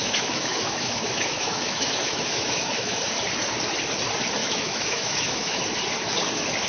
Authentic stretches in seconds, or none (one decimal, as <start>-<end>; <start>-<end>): 3.0-4.4; 5.6-6.7